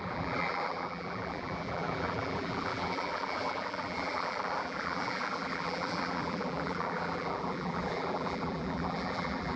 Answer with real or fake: fake